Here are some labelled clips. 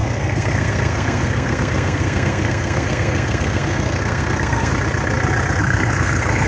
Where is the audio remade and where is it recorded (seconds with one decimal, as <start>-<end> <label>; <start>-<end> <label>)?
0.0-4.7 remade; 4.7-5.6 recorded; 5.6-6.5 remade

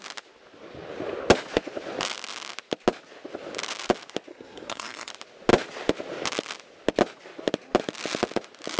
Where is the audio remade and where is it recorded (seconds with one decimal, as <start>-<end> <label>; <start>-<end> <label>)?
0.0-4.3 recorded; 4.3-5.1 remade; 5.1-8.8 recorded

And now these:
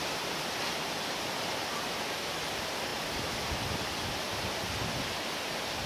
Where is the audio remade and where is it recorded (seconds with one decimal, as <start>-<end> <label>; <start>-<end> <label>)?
0.0-5.9 recorded